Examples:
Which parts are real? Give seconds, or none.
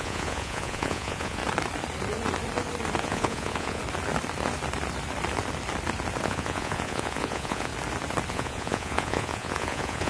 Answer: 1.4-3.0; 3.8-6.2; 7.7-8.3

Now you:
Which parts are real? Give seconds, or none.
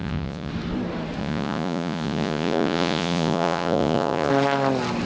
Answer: 0.5-1.2; 4.3-5.1